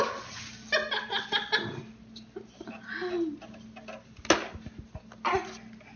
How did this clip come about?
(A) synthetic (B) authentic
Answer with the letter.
B